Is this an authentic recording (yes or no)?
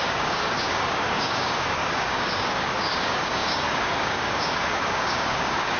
no